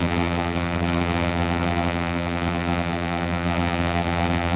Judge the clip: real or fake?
fake